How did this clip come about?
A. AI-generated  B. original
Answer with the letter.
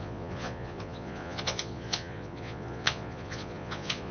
A